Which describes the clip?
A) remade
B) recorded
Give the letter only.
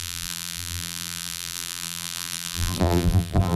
A